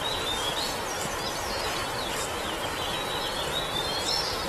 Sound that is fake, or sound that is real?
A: real